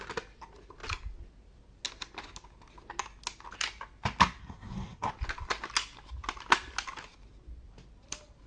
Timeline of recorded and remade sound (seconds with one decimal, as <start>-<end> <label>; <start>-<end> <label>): 0.0-4.4 recorded; 4.4-5.1 remade; 5.1-8.5 recorded